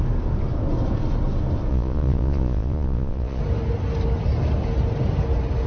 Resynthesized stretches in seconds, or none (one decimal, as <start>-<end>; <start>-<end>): 1.7-3.4